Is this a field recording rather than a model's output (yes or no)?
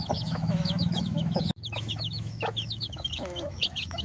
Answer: no